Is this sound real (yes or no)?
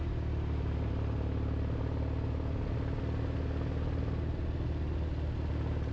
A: yes